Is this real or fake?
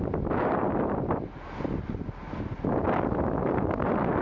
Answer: real